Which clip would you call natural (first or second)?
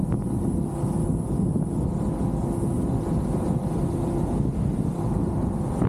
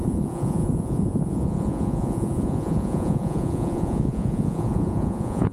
first